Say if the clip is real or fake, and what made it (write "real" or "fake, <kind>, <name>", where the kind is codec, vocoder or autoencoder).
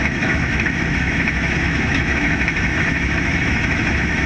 fake, autoencoder, DAC-VAE